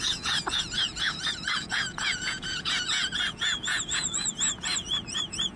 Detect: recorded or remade remade